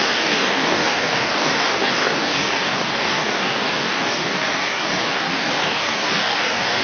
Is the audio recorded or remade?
remade